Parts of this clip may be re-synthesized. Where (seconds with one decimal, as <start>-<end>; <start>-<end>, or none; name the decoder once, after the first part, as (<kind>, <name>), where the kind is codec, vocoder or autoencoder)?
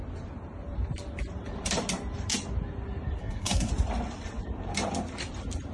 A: 3.2-3.7 (codec, SNAC)